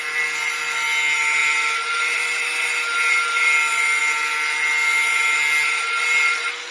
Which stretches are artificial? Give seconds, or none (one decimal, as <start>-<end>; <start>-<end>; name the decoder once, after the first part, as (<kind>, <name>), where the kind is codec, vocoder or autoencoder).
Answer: none